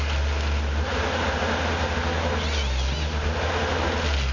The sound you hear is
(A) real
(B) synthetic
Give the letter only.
A